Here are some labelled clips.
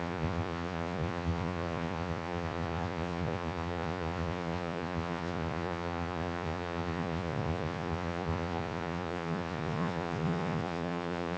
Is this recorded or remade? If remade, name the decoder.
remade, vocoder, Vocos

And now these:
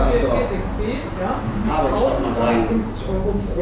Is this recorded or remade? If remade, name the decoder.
recorded